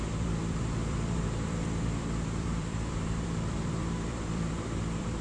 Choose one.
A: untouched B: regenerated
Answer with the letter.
B